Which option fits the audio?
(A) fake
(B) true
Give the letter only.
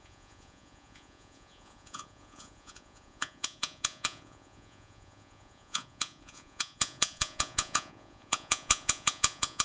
A